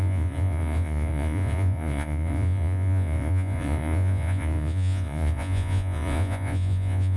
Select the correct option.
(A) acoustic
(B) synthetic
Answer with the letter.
B